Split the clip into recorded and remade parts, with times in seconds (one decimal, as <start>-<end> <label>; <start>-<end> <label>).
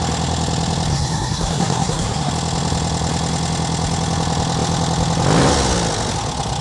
0.0-0.9 recorded; 0.9-2.3 remade; 2.3-6.6 recorded